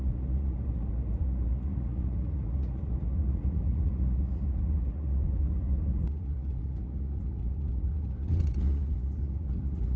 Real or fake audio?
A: fake